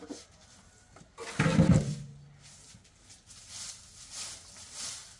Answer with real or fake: real